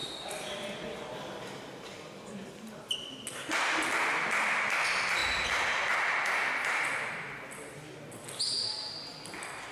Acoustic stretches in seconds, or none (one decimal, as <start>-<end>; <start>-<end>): 0.0-9.7